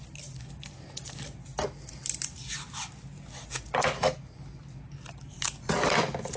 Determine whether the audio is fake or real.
real